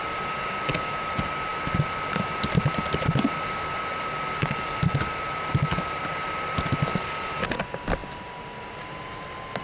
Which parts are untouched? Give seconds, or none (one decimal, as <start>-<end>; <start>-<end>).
0.0-1.5; 3.8-4.4; 6.0-9.6